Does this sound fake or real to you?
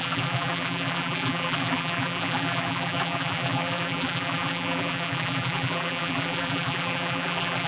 fake